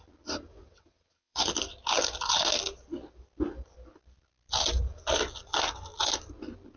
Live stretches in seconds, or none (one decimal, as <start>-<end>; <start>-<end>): 0.0-0.5; 1.4-6.8